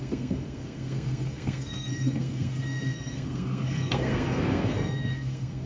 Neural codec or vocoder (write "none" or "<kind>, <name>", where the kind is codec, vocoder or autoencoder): codec, SNAC